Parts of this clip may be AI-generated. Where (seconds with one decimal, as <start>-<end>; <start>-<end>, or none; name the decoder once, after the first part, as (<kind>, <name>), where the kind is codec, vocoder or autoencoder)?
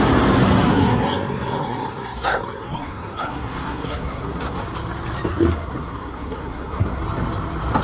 0.7-4.6 (codec, SNAC); 5.3-7.0